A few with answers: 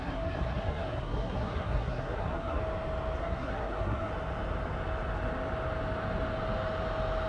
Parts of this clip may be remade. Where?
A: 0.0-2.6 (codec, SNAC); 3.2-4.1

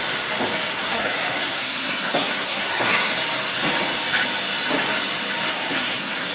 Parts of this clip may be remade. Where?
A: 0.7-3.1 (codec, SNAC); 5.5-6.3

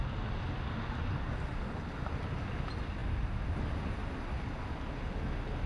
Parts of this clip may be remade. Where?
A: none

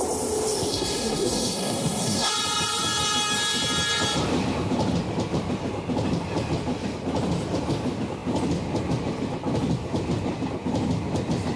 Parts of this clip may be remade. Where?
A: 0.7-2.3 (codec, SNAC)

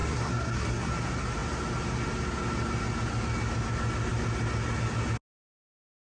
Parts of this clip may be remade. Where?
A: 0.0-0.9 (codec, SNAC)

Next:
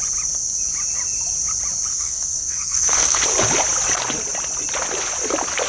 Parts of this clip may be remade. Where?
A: 1.9-3.2 (codec, SNAC)